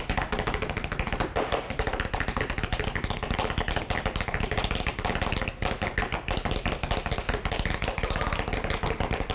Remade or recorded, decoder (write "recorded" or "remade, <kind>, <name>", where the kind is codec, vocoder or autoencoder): recorded